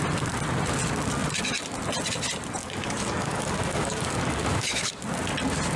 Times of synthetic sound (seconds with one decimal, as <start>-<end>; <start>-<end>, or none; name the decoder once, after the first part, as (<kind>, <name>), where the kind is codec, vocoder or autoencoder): 2.6-4.9 (codec, DAC)